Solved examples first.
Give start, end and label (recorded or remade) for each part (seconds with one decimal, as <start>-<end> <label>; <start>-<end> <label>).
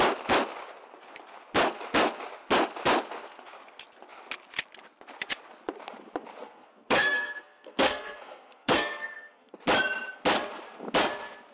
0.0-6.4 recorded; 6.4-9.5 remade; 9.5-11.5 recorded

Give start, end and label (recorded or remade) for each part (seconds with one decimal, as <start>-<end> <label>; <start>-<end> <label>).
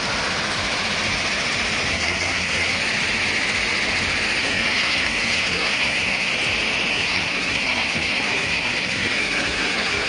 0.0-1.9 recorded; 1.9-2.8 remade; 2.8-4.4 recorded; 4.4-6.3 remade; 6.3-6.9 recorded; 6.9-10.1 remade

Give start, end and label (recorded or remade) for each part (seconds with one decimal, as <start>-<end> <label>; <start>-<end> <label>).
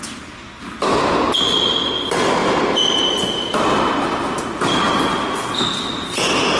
0.0-6.6 recorded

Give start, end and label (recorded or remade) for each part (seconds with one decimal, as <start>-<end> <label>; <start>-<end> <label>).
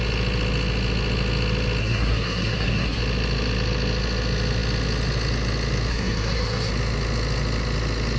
0.0-1.8 recorded; 1.8-3.0 remade; 3.0-5.9 recorded; 5.9-6.7 remade; 6.7-8.2 recorded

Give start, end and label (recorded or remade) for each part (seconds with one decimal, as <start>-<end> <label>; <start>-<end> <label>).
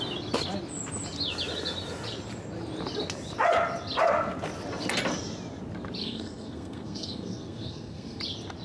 0.0-6.0 recorded; 6.0-8.2 remade; 8.2-8.6 recorded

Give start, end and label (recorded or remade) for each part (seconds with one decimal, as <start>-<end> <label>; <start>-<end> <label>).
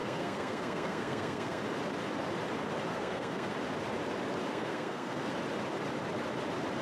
0.0-1.6 remade; 1.6-2.9 recorded; 2.9-3.5 remade; 3.5-4.5 recorded; 4.5-5.3 remade; 5.3-6.8 recorded